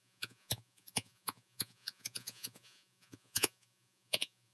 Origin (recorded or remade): remade